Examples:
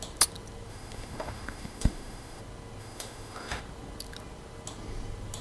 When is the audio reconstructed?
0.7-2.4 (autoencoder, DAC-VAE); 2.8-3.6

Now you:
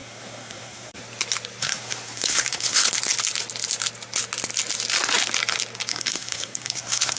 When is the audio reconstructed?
0.0-1.0 (codec, SNAC); 1.6-2.9; 5.9-7.2

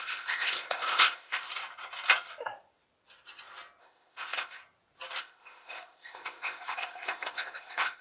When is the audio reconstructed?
0.0-1.5 (codec, ZipCodec); 3.8-4.6; 5.2-8.0

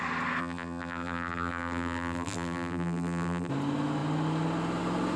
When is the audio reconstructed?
0.4-3.5 (vocoder, BigVGAN v2)

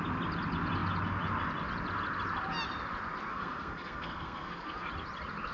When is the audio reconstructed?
3.3-4.9 (codec, SNAC)

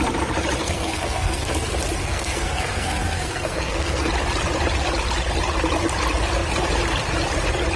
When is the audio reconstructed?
0.6-1.5 (codec, SNAC); 2.0-4.1

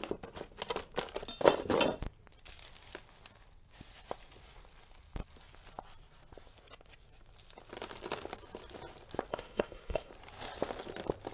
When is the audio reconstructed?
9.3-10.1 (codec, SNAC)

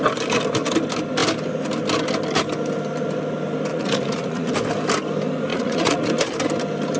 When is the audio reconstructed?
3.7-4.5 (vocoder, Vocos); 5.5-6.1